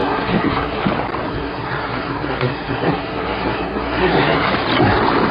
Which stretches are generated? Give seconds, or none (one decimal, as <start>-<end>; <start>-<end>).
0.0-0.8; 1.3-4.5